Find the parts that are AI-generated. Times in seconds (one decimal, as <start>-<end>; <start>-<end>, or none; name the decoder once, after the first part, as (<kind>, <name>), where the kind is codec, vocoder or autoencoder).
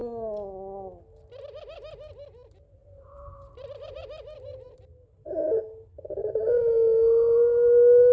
2.8-5.4 (vocoder, BigVGAN v2)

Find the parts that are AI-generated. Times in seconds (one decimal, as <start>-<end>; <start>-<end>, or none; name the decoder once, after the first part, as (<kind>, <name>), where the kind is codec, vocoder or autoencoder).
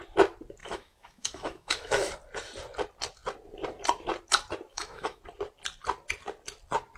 0.6-2.1 (autoencoder, DAC-VAE); 4.7-5.2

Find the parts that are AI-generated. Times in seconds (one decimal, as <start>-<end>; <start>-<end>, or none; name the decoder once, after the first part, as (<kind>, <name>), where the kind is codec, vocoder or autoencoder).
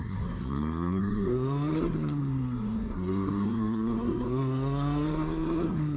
0.0-6.0 (codec, SNAC)